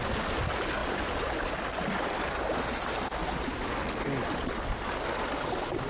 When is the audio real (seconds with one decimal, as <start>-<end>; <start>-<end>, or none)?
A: 0.0-5.9